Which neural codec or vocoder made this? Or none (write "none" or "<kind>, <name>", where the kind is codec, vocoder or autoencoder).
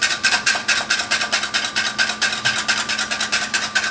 none